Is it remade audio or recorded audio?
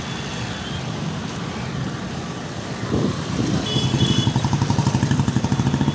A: recorded